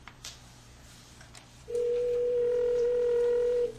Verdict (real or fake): fake